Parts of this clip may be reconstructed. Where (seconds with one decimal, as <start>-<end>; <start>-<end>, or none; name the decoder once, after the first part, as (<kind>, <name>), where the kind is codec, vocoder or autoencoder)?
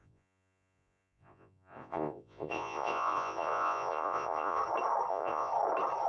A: 0.0-4.6 (vocoder, Vocos); 5.1-5.5